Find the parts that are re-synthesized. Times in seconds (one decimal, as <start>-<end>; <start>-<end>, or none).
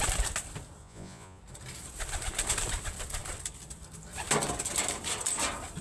0.8-1.4